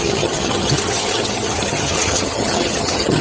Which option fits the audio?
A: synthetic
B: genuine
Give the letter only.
A